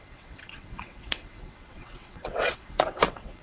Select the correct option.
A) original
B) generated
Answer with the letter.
B